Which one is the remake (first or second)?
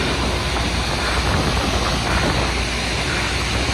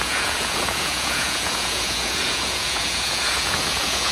second